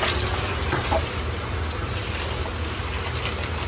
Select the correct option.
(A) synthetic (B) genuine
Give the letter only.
B